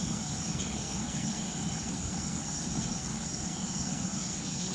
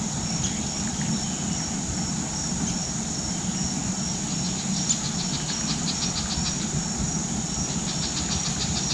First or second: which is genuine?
second